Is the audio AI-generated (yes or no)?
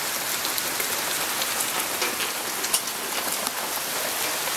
no